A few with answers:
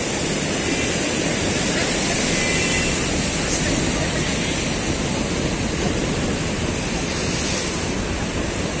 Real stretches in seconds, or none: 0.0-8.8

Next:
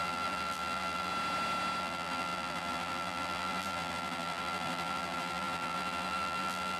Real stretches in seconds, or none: 1.1-1.8

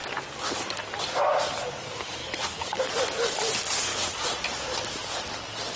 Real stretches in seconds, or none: 0.0-2.2; 2.9-5.8

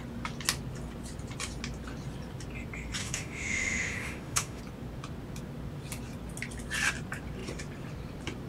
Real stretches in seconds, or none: 0.0-3.0; 4.6-8.5